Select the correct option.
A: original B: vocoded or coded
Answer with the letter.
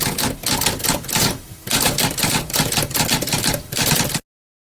A